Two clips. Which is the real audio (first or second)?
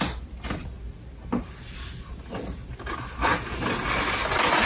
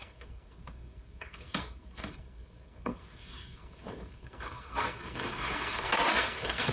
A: first